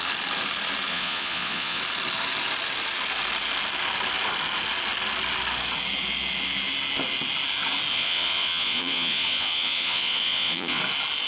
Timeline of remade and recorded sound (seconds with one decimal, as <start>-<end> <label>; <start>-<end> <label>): 0.0-0.9 recorded; 0.9-1.8 remade; 1.8-7.9 recorded; 7.9-10.8 remade; 10.8-11.3 recorded